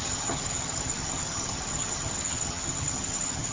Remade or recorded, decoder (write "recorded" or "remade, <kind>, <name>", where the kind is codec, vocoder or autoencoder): remade, vocoder, HiFi-GAN